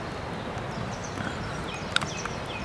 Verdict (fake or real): real